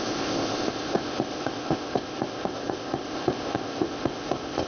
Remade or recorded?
remade